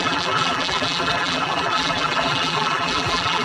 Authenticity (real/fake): fake